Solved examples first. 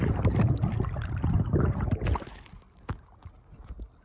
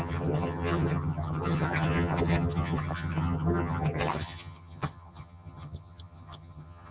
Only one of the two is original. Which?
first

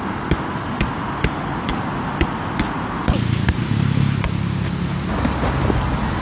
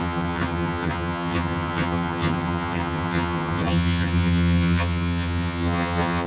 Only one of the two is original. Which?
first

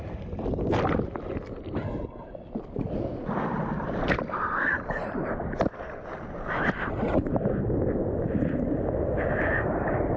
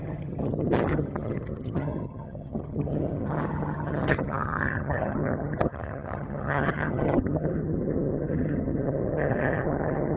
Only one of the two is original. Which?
first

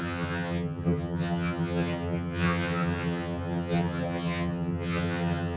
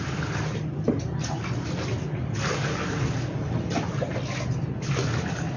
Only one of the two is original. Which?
second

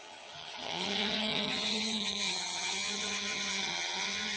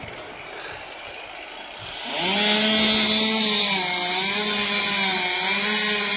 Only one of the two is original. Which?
second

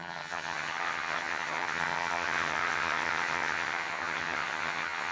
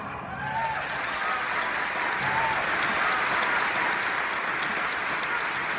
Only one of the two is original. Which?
second